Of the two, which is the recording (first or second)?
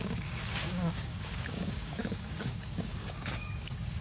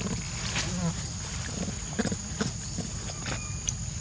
second